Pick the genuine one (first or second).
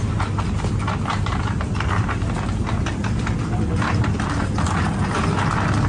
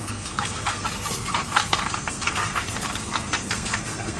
first